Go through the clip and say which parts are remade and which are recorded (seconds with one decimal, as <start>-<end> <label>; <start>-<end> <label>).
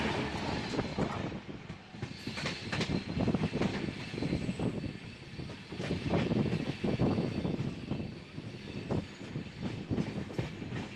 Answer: 0.0-11.0 recorded